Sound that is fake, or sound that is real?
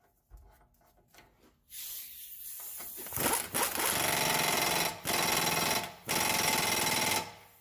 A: real